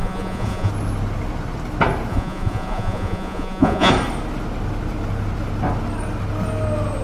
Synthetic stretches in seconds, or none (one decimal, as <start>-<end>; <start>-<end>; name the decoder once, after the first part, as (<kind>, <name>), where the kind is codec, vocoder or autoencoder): 0.0-0.7 (vocoder, Vocos); 2.1-3.9

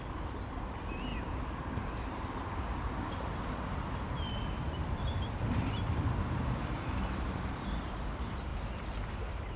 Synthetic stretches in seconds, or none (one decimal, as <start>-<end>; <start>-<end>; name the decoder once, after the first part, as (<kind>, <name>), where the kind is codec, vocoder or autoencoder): 0.0-1.1 (vocoder, BigVGAN v2); 3.0-8.5

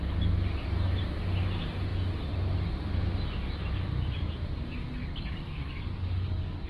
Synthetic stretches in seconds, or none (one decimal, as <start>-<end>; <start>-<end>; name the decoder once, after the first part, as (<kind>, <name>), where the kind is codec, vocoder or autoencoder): 5.0-6.7 (codec, DAC)

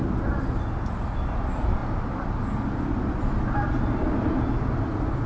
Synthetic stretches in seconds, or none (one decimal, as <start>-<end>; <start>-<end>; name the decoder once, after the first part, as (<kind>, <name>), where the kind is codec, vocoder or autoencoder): none

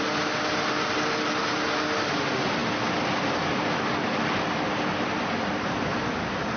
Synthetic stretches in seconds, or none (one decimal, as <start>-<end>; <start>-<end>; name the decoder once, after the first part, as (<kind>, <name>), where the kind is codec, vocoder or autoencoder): none

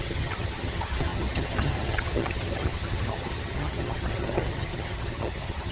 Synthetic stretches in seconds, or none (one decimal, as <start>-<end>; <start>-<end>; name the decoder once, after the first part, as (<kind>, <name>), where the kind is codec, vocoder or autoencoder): 0.0-5.7 (vocoder, HiFi-GAN)

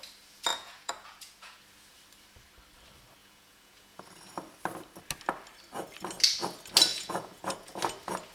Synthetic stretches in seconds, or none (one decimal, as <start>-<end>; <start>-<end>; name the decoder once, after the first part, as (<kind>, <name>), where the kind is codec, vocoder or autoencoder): 0.5-1.6 (vocoder, Vocos); 3.2-4.0; 6.9-7.7

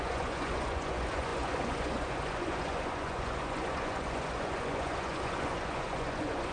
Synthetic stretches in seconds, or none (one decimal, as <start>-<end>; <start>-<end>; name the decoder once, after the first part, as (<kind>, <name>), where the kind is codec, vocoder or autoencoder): 0.0-6.5 (vocoder, Vocos)